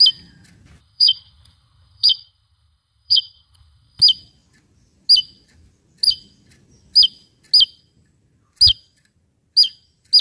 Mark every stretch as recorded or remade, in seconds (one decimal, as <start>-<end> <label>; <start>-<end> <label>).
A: 0.0-0.8 recorded; 0.8-4.0 remade; 4.0-10.2 recorded